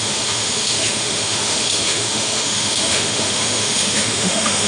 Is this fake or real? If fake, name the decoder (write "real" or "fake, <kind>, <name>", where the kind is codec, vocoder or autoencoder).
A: fake, autoencoder, DAC-VAE